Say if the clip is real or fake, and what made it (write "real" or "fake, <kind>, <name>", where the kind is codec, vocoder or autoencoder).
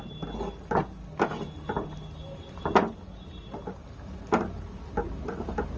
real